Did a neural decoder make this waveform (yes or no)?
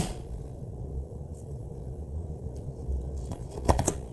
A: yes